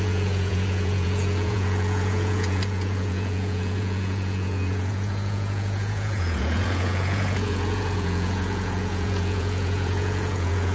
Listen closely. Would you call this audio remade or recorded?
remade